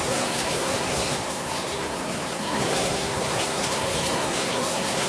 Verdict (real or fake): fake